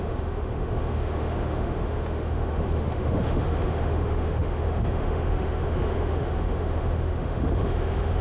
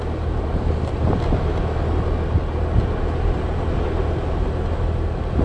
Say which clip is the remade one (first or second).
first